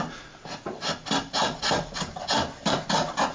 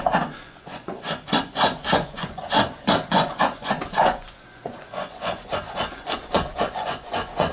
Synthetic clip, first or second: second